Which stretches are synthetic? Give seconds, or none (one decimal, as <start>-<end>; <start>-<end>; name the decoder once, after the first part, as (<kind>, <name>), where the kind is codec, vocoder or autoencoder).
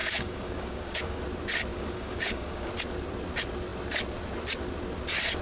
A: 0.0-1.2 (codec, DAC); 1.7-2.7